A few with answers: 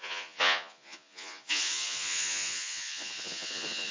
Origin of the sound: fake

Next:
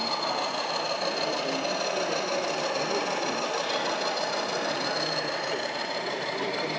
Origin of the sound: real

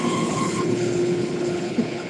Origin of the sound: fake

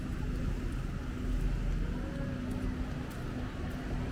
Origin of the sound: real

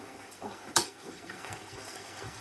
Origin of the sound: fake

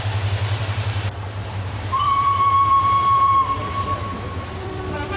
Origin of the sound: fake